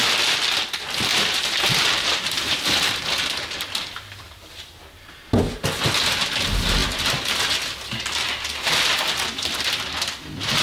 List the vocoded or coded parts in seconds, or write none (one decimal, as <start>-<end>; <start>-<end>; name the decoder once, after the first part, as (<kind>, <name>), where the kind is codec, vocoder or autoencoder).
1.1-5.1 (vocoder, BigVGAN v2)